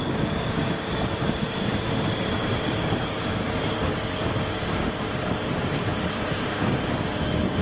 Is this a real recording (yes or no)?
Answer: no